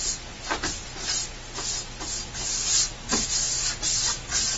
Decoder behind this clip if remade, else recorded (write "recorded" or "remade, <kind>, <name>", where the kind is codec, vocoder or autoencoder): recorded